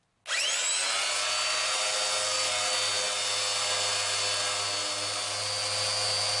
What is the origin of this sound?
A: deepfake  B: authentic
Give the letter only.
B